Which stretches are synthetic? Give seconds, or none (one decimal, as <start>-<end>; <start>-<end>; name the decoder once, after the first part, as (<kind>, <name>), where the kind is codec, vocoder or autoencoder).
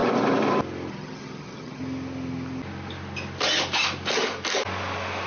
0.9-1.8 (vocoder, HiFi-GAN)